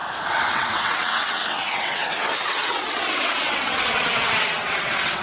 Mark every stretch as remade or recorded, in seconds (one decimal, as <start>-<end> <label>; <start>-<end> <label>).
0.0-0.5 recorded; 0.5-5.2 remade